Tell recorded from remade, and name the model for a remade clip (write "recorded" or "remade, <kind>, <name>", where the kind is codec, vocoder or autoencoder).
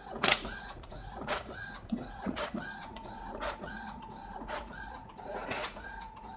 remade, vocoder, Vocos